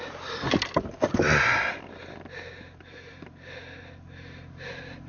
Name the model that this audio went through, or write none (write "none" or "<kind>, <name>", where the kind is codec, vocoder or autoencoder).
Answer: none